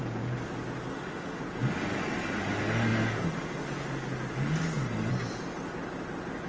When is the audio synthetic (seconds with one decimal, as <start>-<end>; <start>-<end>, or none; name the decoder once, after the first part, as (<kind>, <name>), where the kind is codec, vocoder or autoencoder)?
0.9-1.4 (autoencoder, DAC-VAE)